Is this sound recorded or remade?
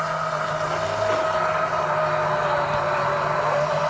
recorded